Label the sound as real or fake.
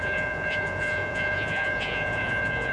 fake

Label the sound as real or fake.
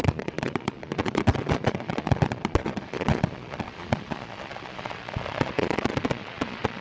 fake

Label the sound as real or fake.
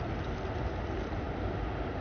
real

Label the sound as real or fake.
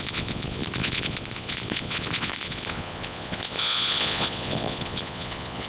fake